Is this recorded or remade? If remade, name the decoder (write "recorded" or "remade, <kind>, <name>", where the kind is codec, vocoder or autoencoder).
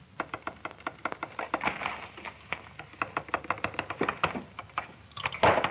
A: recorded